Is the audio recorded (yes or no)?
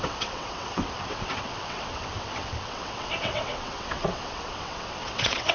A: no